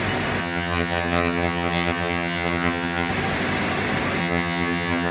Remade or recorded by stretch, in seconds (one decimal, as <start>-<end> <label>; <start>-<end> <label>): 0.0-0.4 recorded; 0.4-3.1 remade; 3.1-4.2 recorded; 4.2-5.1 remade

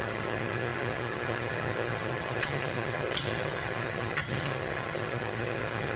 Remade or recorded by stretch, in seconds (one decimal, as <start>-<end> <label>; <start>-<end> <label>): 0.0-6.0 remade

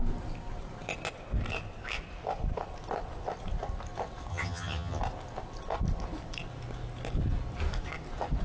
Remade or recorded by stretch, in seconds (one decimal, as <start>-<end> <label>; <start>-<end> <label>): 0.0-4.3 recorded; 4.3-5.0 remade; 5.0-8.4 recorded

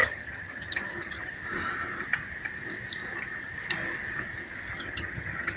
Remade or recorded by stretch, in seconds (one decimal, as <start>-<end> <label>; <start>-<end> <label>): 0.0-1.3 remade; 1.3-4.7 recorded; 4.7-5.6 remade

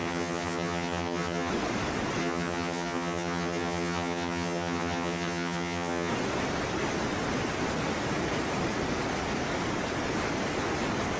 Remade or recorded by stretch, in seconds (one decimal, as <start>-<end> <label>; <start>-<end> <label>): 0.0-1.5 remade; 1.5-2.2 recorded; 2.2-6.1 remade; 6.1-11.2 recorded

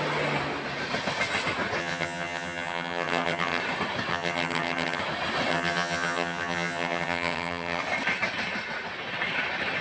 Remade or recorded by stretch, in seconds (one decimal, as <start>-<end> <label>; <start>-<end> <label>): 0.0-1.8 recorded; 1.8-3.6 remade; 3.6-4.1 recorded; 4.1-5.0 remade; 5.0-5.5 recorded; 5.5-7.8 remade; 7.8-9.8 recorded

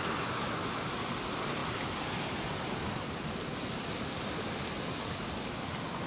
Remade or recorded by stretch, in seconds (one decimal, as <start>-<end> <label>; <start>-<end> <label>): 0.0-6.1 recorded

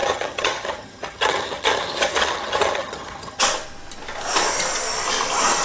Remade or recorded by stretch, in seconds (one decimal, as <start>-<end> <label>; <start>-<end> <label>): 0.0-3.4 remade; 3.4-5.6 recorded